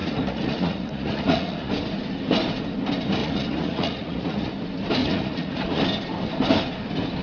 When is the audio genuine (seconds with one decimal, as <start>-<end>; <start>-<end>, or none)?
1.7-3.2; 4.5-5.0; 5.8-7.2